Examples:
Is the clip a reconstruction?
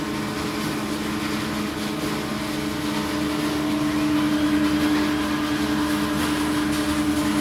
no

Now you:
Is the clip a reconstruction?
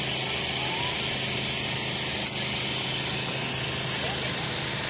no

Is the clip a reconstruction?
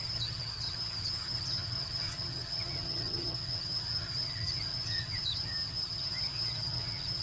yes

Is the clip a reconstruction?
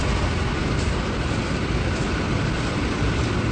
no